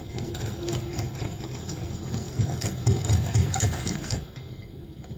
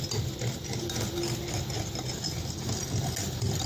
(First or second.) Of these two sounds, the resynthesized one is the first